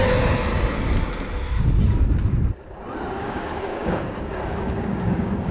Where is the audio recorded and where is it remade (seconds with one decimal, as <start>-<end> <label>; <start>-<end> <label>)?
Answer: 0.0-3.2 recorded; 3.2-5.5 remade

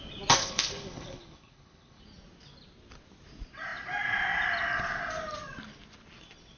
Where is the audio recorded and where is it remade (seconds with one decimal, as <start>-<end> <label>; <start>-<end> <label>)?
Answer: 0.0-0.4 recorded; 0.4-2.0 remade; 2.0-6.6 recorded

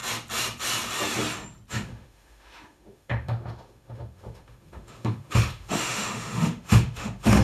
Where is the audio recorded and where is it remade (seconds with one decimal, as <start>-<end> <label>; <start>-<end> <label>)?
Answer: 0.0-1.7 recorded; 1.7-7.4 remade

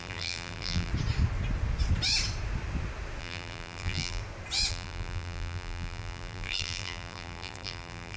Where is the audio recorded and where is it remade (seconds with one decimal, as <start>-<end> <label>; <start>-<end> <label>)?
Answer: 0.0-0.9 remade; 0.9-3.2 recorded; 3.2-4.2 remade; 4.2-4.7 recorded; 4.7-8.2 remade

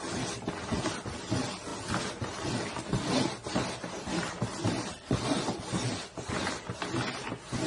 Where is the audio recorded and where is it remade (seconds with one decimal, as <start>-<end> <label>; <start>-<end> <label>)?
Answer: 0.0-1.7 recorded; 1.7-6.3 remade; 6.3-7.7 recorded

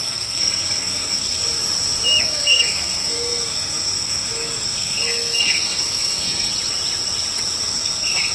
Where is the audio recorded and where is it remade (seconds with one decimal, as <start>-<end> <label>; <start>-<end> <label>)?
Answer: 0.0-1.4 remade; 1.4-2.2 recorded; 2.2-6.5 remade; 6.5-7.6 recorded; 7.6-8.3 remade

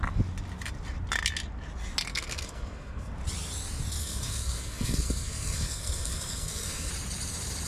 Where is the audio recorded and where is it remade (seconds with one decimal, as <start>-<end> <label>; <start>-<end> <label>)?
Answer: 0.0-2.1 recorded; 2.1-3.1 remade; 3.1-4.0 recorded; 4.0-6.9 remade; 6.9-7.7 recorded

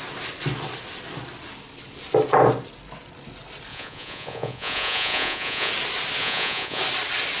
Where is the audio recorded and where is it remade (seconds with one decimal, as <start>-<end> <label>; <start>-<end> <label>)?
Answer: 0.0-3.7 recorded; 3.7-5.7 remade; 5.7-6.2 recorded; 6.2-6.8 remade; 6.8-7.4 recorded